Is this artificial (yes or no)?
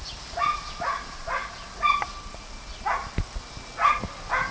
no